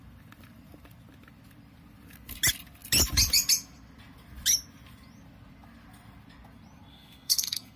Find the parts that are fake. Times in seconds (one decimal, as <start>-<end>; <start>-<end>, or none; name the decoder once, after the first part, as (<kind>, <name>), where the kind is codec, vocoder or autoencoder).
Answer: 6.9-7.8 (codec, SNAC)